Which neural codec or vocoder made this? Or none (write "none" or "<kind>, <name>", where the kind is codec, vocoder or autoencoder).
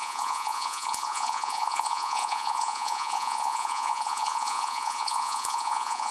vocoder, Vocos